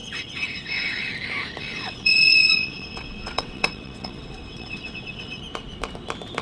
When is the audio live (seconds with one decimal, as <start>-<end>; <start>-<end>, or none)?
1.1-1.6; 5.4-6.4